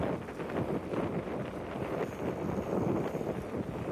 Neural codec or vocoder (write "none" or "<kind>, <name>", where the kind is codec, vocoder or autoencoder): none